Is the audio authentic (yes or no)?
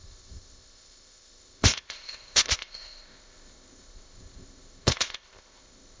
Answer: no